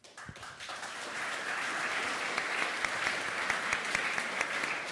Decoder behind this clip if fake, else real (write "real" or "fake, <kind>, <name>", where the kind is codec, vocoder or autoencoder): real